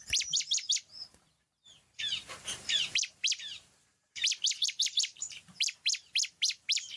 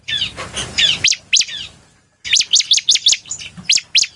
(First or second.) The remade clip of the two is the first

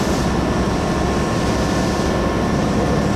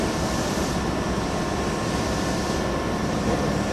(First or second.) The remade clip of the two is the second